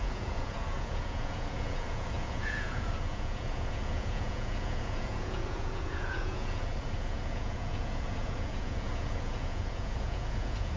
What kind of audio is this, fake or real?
fake